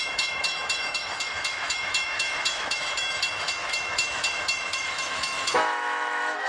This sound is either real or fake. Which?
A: fake